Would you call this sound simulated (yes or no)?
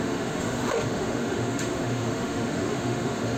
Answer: yes